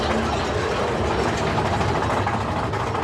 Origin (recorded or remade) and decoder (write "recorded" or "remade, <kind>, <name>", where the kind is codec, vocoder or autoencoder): recorded